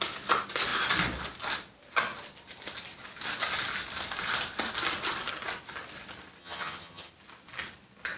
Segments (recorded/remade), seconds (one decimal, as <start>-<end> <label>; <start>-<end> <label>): 0.0-6.4 recorded; 6.4-7.1 remade; 7.1-8.2 recorded